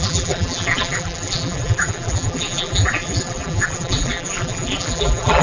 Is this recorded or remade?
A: remade